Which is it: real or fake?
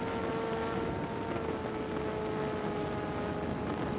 real